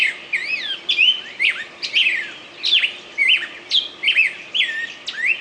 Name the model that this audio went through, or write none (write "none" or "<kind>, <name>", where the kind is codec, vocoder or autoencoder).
none